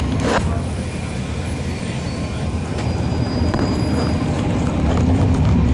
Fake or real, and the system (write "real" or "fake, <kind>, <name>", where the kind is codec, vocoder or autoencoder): real